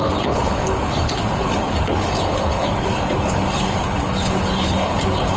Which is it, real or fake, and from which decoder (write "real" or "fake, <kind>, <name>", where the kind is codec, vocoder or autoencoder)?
fake, codec, HILCodec